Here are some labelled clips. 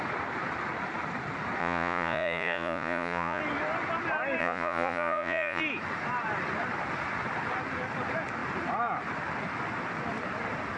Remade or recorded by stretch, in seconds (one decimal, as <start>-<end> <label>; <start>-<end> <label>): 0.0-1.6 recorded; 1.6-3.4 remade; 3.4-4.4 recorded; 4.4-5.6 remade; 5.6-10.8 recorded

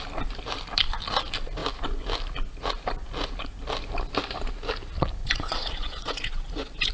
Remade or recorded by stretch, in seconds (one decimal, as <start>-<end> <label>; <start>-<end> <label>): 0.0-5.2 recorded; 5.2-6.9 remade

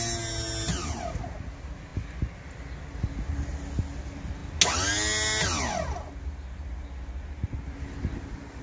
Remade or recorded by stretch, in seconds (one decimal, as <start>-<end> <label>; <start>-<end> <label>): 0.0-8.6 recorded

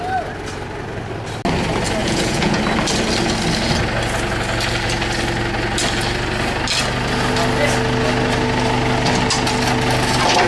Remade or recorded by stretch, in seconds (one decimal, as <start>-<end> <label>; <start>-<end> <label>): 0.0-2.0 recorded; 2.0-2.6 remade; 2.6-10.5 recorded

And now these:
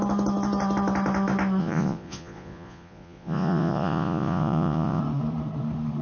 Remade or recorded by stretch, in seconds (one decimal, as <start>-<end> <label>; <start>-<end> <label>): 0.0-1.6 recorded; 1.6-5.0 remade; 5.0-6.0 recorded